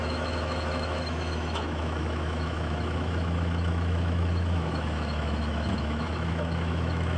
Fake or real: fake